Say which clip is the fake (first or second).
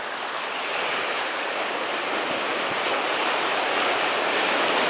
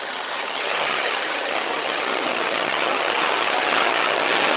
second